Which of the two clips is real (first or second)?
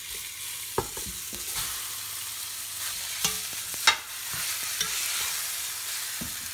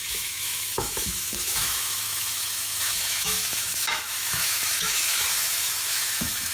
first